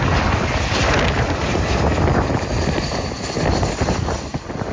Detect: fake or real real